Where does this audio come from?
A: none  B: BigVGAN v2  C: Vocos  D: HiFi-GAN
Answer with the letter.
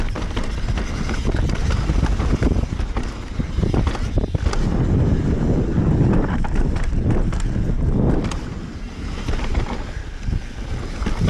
B